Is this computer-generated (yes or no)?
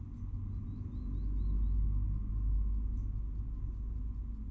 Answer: no